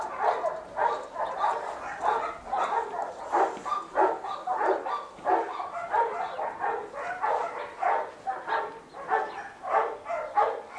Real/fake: real